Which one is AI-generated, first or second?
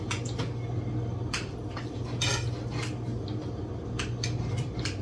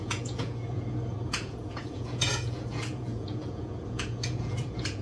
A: second